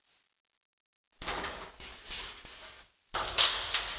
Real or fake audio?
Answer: real